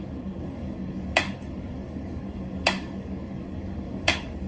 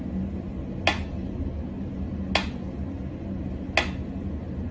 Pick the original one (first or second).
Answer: second